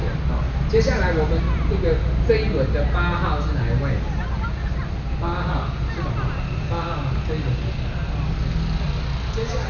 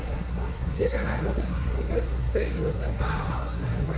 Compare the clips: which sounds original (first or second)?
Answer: first